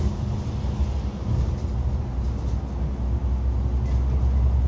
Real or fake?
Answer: real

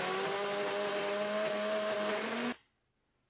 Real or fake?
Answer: real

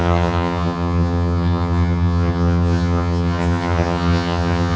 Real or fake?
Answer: fake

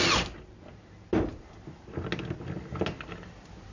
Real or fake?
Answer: real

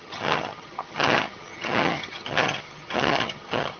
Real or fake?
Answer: fake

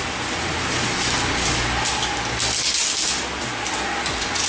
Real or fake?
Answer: real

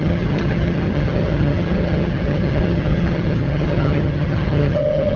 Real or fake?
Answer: fake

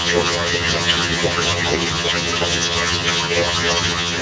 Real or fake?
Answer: fake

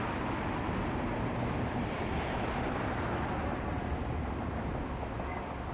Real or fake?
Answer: real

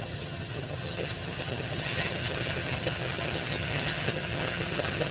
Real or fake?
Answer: fake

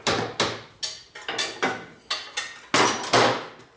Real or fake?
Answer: real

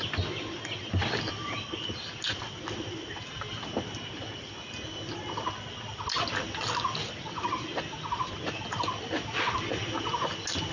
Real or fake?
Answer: real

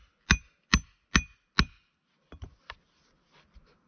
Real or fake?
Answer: real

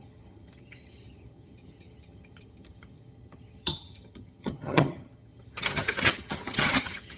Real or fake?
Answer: fake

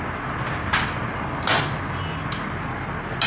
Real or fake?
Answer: real